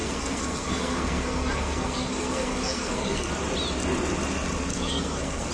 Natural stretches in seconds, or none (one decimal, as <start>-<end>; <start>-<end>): 3.3-4.7